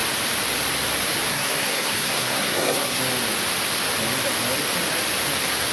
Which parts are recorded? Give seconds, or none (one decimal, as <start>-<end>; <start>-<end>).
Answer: 0.0-1.3; 3.0-5.7